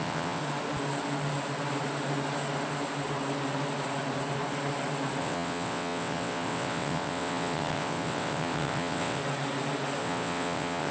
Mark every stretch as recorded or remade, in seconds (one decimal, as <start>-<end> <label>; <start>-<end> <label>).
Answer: 0.0-0.4 remade; 0.4-5.2 recorded; 5.2-9.2 remade; 9.2-10.0 recorded; 10.0-10.9 remade